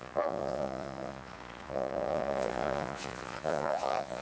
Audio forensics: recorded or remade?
remade